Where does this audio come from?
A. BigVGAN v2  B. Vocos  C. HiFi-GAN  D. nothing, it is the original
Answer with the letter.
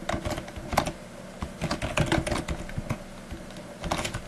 D